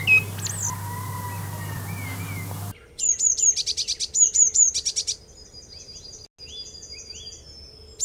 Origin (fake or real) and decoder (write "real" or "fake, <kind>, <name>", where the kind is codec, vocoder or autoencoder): real